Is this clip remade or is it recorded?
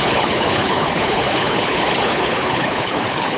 remade